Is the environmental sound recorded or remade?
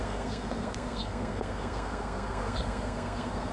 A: remade